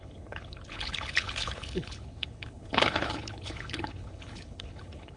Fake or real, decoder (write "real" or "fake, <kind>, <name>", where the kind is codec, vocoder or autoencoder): fake, codec, HILCodec